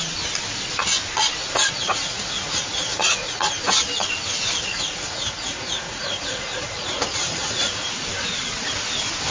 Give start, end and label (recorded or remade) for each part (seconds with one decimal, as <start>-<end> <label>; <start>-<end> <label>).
0.0-1.4 recorded; 1.4-3.6 remade; 3.6-4.6 recorded; 4.6-7.9 remade; 7.9-9.3 recorded